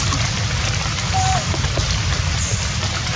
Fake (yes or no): no